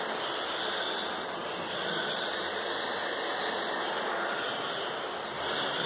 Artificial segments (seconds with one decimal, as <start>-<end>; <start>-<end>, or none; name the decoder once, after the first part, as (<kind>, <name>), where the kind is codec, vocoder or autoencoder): none